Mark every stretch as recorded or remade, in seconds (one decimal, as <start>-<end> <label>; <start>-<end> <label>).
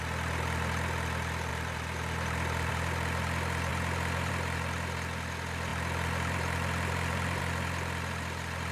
0.0-1.5 recorded; 1.5-2.7 remade; 2.7-5.7 recorded; 5.7-7.4 remade; 7.4-8.7 recorded